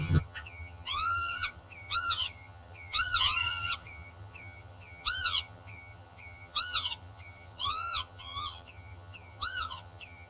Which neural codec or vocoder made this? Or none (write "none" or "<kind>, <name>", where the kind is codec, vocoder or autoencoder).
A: vocoder, HiFi-GAN